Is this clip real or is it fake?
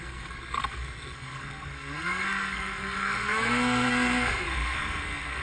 fake